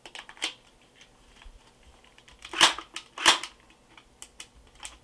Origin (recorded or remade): recorded